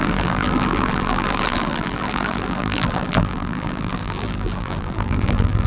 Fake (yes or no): yes